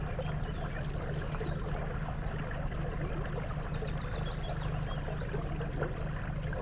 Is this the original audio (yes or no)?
yes